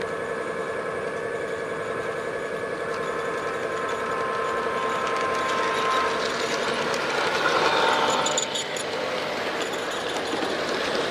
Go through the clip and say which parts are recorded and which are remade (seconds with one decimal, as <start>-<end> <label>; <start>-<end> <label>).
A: 0.0-11.1 recorded